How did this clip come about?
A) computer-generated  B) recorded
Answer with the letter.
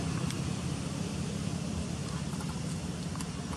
B